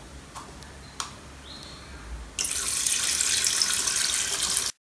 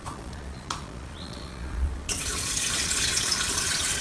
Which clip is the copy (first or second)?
second